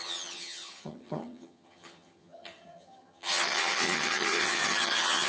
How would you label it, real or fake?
fake